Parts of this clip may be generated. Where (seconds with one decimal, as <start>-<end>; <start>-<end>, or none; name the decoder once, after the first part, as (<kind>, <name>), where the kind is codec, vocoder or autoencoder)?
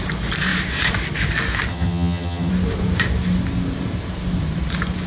1.7-2.5 (vocoder, HiFi-GAN)